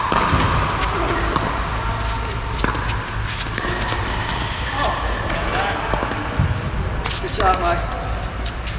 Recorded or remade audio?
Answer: recorded